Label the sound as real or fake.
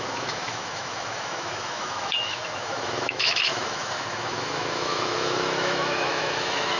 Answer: fake